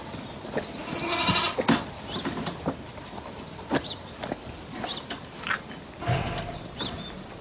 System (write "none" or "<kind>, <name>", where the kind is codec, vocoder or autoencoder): none